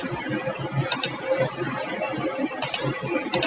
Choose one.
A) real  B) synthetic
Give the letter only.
A